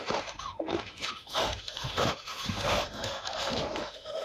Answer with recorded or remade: remade